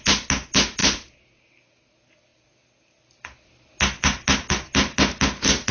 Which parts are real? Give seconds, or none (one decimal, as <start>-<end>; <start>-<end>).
0.0-5.7